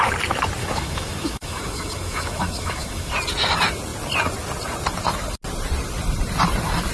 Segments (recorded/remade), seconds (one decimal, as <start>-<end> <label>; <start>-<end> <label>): 0.0-0.6 recorded; 0.6-3.1 remade; 3.1-6.9 recorded